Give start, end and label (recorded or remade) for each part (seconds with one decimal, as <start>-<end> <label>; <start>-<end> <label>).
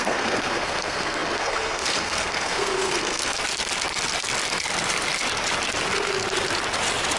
0.0-3.4 remade; 3.4-7.2 recorded